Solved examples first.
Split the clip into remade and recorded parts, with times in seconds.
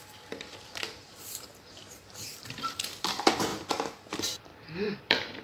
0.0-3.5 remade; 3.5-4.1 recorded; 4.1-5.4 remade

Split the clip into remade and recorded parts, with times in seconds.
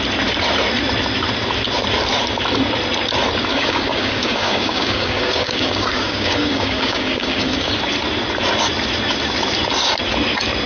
0.0-3.5 recorded; 3.5-7.7 remade; 7.7-10.7 recorded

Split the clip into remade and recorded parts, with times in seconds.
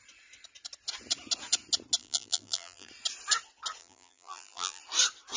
0.0-2.0 recorded; 2.0-2.9 remade; 2.9-3.8 recorded; 3.8-4.8 remade; 4.8-5.4 recorded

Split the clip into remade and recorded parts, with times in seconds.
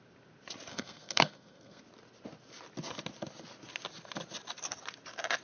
0.0-0.7 recorded; 0.7-1.8 remade; 1.8-5.4 recorded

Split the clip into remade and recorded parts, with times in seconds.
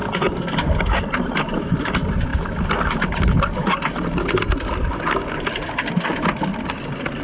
0.0-7.2 recorded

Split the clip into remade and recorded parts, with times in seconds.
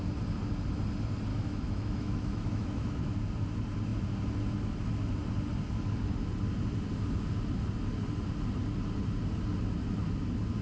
0.0-1.3 recorded; 1.3-3.1 remade; 3.1-10.6 recorded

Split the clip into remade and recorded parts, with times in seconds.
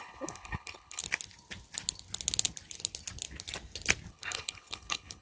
0.0-1.0 remade; 1.0-4.1 recorded; 4.1-5.2 remade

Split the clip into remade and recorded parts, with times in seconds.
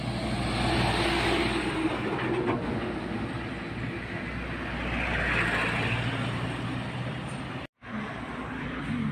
0.0-1.4 recorded; 1.4-2.1 remade; 2.1-9.1 recorded